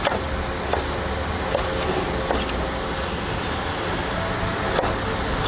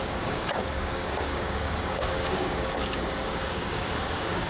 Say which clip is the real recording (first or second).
first